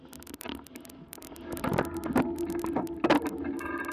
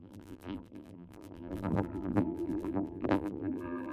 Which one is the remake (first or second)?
second